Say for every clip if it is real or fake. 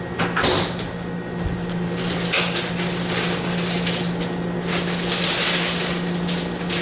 real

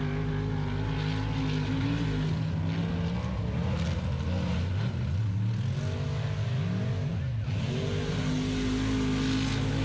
real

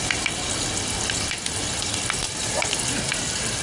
fake